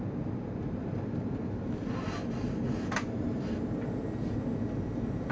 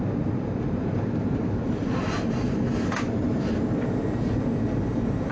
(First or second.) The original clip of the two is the first